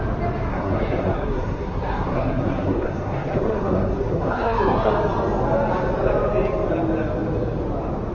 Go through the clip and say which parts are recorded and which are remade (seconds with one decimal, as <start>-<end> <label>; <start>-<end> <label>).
0.0-0.5 recorded; 0.5-4.9 remade; 4.9-8.1 recorded